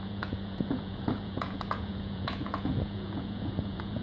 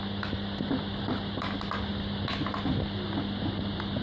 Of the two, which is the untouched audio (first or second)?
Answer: second